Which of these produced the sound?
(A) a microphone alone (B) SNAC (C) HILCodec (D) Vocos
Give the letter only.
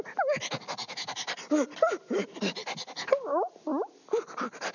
A